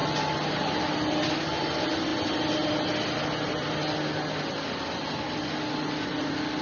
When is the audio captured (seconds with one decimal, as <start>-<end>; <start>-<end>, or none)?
0.0-6.6